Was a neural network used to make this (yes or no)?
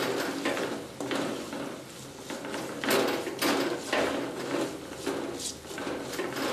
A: no